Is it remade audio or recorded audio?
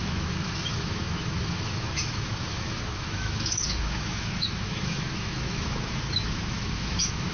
remade